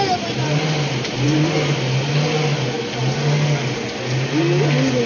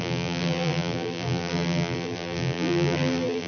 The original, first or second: first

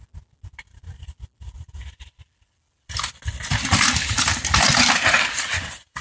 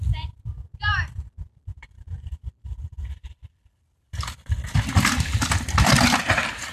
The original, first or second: first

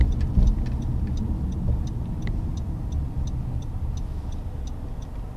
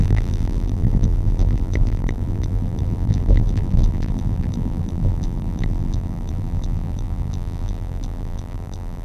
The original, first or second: first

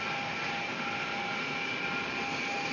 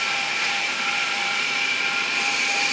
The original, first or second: first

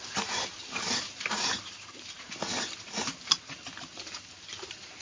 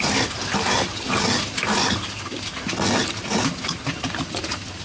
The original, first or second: second